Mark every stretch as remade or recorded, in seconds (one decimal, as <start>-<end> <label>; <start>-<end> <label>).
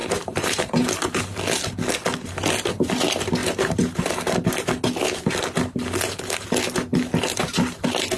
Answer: 0.0-1.2 remade; 1.2-3.4 recorded; 3.4-4.5 remade; 4.5-8.2 recorded